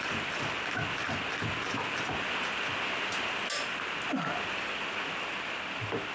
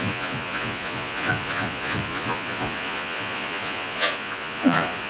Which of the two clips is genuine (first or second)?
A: first